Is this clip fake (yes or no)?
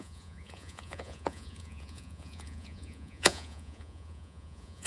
yes